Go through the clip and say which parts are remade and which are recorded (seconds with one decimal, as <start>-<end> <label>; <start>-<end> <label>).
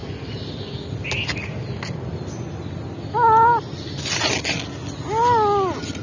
0.0-6.0 recorded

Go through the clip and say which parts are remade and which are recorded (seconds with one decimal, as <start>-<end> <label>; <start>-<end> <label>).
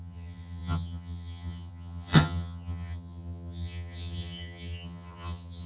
0.0-5.7 remade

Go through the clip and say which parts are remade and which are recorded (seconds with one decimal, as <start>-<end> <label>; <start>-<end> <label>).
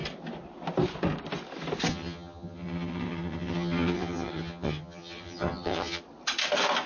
0.0-1.9 recorded; 1.9-6.0 remade; 6.0-6.9 recorded